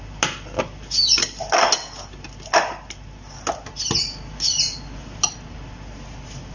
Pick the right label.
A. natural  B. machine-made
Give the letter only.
A